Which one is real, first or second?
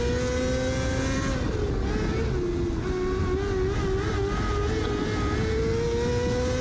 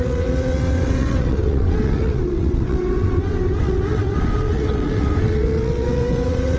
first